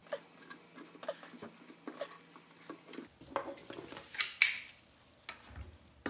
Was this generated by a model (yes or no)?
no